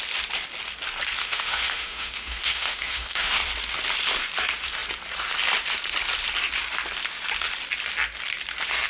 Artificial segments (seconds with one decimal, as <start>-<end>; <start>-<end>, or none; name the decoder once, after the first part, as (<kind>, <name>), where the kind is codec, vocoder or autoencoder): 1.2-3.4 (autoencoder, DAC-VAE)